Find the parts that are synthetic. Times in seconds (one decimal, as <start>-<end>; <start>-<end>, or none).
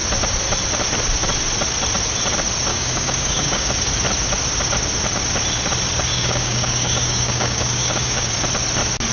2.7-3.7; 6.1-8.3